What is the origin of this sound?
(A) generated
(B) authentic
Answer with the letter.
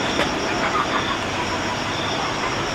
B